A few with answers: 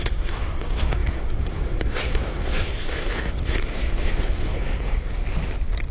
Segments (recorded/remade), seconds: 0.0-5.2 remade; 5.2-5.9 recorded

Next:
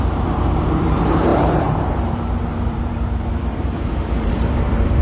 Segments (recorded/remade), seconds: 0.0-5.0 remade

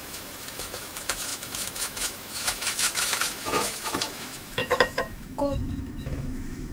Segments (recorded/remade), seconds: 0.0-6.7 remade

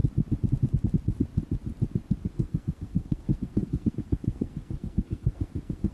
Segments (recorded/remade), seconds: 0.0-2.3 recorded; 2.3-5.9 remade

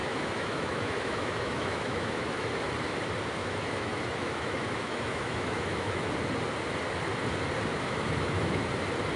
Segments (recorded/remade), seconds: 0.0-2.5 remade; 2.5-3.4 recorded; 3.4-6.1 remade; 6.1-7.7 recorded; 7.7-8.7 remade; 8.7-9.2 recorded

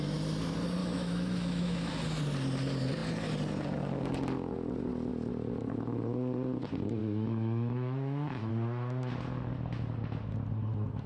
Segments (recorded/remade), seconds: 0.0-0.8 recorded; 0.8-1.9 remade; 1.9-7.0 recorded; 7.0-8.5 remade; 8.5-11.1 recorded

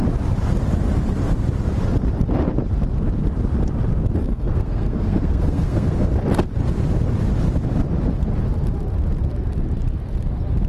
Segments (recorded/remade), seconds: 0.0-4.2 recorded; 4.2-6.1 remade; 6.1-10.7 recorded

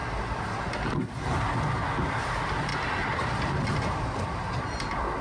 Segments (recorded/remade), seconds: 0.0-0.7 remade; 0.7-2.7 recorded; 2.7-4.6 remade; 4.6-5.2 recorded